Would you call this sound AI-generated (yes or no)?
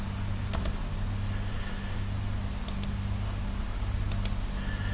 no